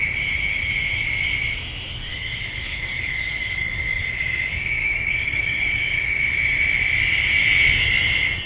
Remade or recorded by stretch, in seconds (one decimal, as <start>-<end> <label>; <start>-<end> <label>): 0.0-2.1 recorded; 2.1-4.0 remade; 4.0-4.8 recorded; 4.8-5.8 remade; 5.8-8.5 recorded